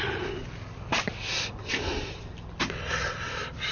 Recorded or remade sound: recorded